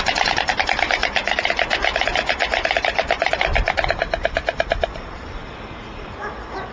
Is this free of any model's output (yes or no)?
no